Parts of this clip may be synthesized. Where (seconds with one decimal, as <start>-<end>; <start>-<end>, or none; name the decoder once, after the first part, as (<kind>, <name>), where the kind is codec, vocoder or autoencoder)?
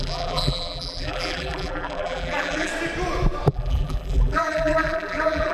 0.0-2.7 (vocoder, BigVGAN v2); 3.5-5.5